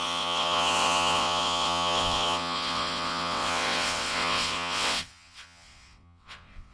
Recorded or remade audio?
remade